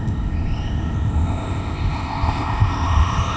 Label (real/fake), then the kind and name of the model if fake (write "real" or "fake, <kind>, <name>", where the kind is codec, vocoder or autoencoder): fake, codec, ZipCodec